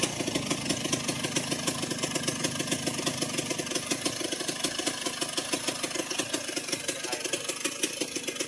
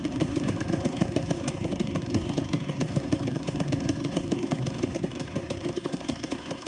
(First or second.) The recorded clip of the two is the first